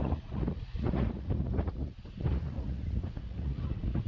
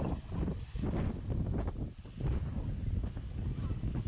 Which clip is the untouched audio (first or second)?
second